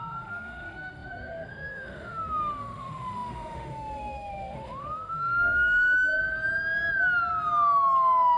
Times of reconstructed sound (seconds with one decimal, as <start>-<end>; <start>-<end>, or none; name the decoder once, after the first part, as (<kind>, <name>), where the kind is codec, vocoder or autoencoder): 0.0-6.2 (autoencoder, DAC-VAE)